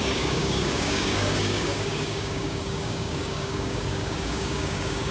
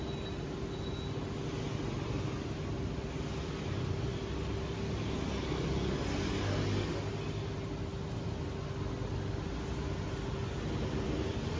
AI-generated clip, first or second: first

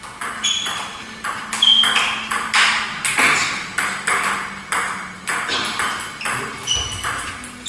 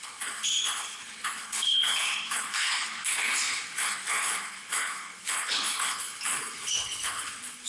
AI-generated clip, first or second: second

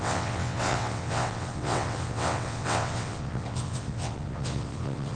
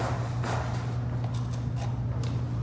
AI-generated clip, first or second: first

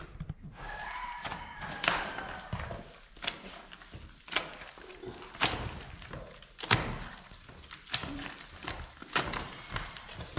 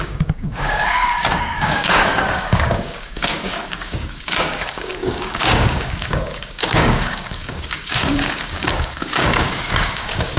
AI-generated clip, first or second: second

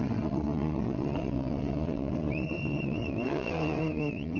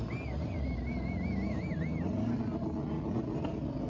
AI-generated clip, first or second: first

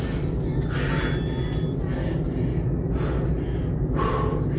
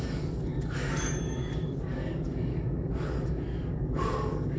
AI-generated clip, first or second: second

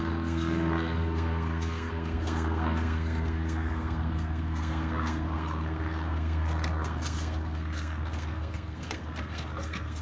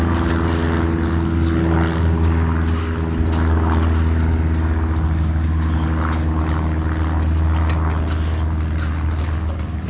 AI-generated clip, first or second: first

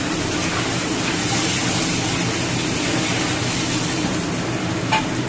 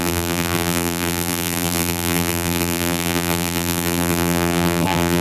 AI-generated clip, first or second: second